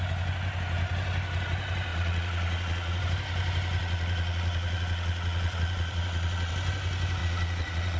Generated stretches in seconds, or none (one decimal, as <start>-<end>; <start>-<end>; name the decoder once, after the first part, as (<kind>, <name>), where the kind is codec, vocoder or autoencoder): 1.9-3.0 (vocoder, Vocos); 3.8-6.5; 7.2-8.0